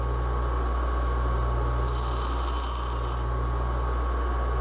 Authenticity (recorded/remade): recorded